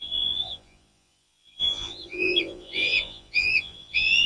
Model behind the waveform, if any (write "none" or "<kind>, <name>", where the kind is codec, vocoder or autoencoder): vocoder, Vocos